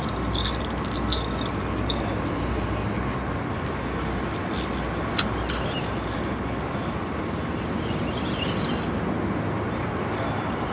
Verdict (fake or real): real